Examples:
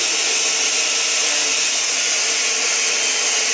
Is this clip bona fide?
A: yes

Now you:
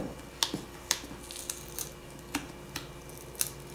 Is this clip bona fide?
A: yes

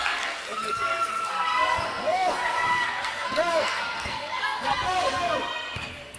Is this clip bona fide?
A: no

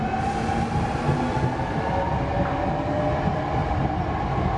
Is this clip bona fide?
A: yes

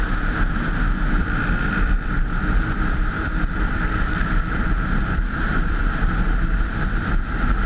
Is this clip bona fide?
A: no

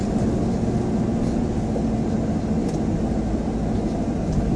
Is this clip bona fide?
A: yes